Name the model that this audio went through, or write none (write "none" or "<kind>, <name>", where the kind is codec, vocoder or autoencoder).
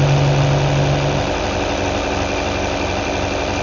none